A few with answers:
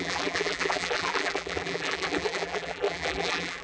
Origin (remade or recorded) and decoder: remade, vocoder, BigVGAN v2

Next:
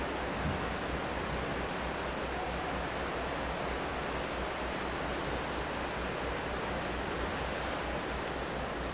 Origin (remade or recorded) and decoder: recorded